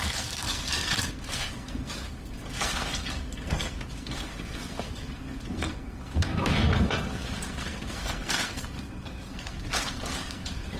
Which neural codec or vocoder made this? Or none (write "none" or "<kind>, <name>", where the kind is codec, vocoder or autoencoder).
codec, SNAC